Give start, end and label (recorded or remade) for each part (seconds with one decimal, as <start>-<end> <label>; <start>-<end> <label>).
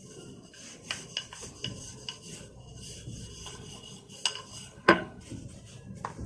0.0-3.4 recorded; 3.4-4.1 remade; 4.1-4.5 recorded; 4.5-5.2 remade; 5.2-6.3 recorded